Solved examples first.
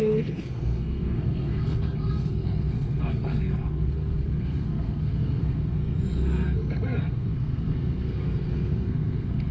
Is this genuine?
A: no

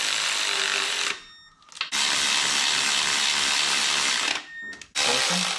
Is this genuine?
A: yes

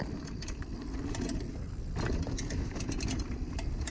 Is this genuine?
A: yes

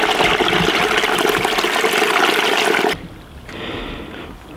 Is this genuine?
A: yes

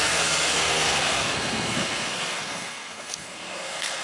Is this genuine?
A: no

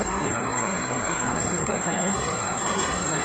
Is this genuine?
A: no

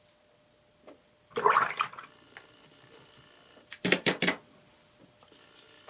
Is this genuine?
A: yes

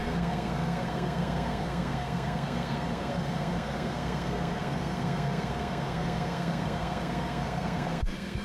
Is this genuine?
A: no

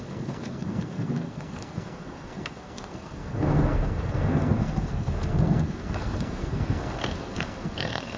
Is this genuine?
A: no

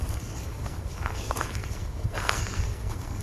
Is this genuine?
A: no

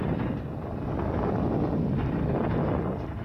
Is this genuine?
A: yes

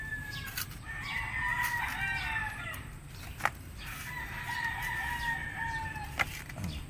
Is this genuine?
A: yes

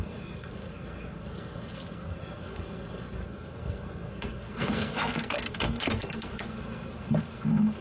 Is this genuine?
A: no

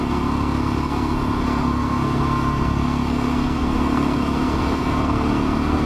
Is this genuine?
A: no